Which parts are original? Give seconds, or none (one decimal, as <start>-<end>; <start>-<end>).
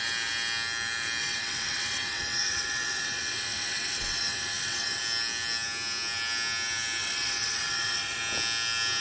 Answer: 0.0-1.2; 5.0-7.0; 8.2-9.0